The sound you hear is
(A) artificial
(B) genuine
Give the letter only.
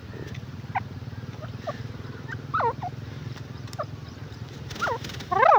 B